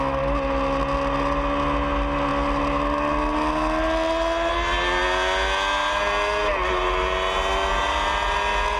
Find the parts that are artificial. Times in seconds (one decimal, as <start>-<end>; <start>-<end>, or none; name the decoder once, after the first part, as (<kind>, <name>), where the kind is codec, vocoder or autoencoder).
none